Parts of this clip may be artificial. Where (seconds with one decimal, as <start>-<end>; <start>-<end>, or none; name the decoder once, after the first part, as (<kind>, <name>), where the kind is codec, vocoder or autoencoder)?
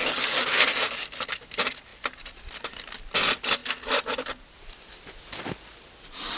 none